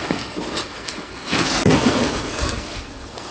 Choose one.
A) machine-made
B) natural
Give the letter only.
A